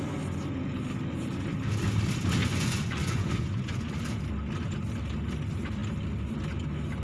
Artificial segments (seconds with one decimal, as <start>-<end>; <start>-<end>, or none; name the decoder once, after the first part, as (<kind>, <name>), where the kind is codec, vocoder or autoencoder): 2.4-4.0 (vocoder, Vocos)

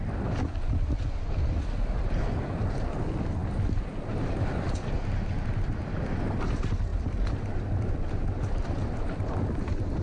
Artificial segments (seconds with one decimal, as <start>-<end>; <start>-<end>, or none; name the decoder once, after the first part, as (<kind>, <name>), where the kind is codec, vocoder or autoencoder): none

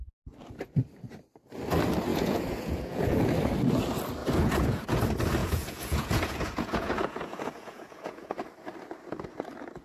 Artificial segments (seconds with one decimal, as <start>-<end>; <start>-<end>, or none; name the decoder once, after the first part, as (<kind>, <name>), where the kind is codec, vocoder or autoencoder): 2.1-3.2 (vocoder, Vocos); 4.2-5.0; 5.4-8.4

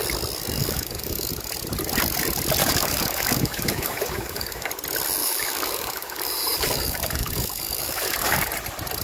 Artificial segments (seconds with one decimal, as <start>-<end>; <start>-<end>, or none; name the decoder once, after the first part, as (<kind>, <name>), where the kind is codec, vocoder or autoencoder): 0.6-1.3 (codec, DAC); 2.6-4.7; 5.2-8.5